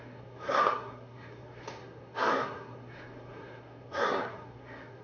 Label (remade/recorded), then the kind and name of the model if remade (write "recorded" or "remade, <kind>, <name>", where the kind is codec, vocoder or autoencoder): remade, codec, SNAC